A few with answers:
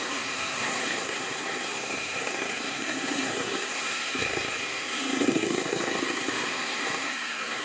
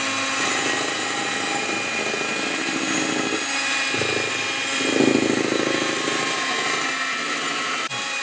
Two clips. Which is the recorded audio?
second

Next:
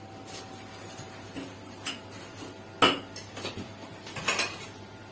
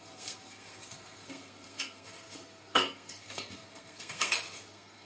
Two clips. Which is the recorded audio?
first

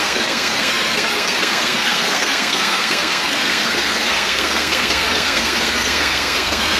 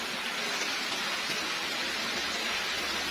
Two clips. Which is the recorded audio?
second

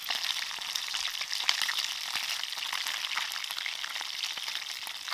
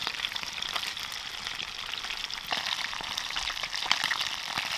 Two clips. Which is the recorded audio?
first